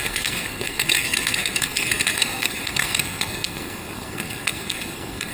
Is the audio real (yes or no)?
no